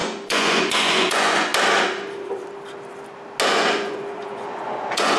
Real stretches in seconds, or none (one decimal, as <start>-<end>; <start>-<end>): 1.5-3.5